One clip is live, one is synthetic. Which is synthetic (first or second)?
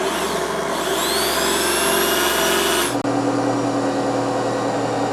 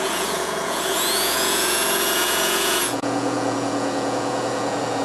second